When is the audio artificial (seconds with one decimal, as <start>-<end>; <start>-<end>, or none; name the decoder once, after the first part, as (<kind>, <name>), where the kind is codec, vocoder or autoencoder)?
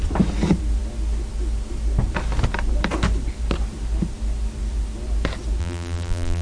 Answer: 5.6-6.4 (vocoder, BigVGAN v2)